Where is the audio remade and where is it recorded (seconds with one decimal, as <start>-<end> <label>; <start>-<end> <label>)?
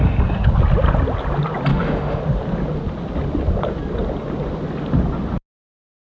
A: 0.0-1.7 recorded; 1.7-2.2 remade; 2.2-6.2 recorded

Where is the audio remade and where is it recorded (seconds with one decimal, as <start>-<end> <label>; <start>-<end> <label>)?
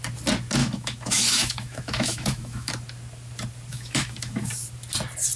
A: 0.0-0.6 recorded; 0.6-2.7 remade; 2.7-3.7 recorded; 3.7-4.5 remade; 4.5-5.4 recorded